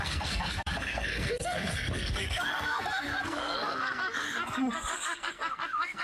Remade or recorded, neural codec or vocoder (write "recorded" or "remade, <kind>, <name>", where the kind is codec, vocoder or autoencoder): remade, codec, SNAC